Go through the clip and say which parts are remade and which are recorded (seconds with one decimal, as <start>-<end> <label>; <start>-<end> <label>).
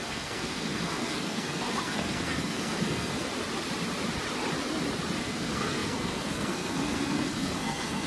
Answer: 0.0-3.3 remade; 3.3-5.2 recorded; 5.2-8.1 remade